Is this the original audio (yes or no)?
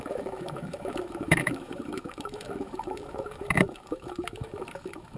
no